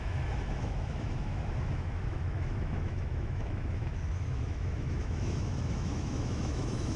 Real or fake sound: fake